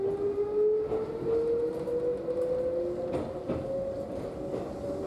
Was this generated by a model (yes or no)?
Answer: no